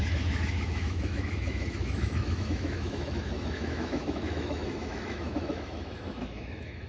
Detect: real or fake fake